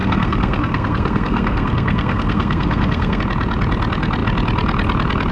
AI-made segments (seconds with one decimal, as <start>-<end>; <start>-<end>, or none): 0.0-3.2